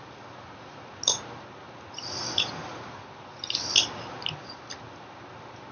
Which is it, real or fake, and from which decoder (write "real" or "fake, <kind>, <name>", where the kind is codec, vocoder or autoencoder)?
real